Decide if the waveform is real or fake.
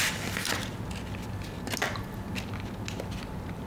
real